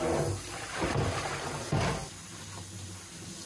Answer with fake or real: real